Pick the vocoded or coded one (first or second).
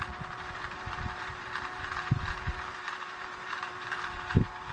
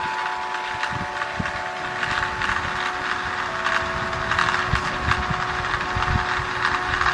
first